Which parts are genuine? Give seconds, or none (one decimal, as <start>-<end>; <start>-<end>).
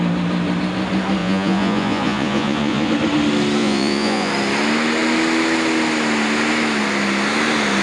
0.0-1.2; 2.9-3.6; 4.3-7.8